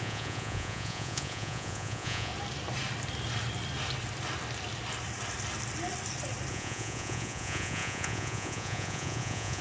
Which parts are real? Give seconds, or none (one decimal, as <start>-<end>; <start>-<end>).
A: 2.3-6.5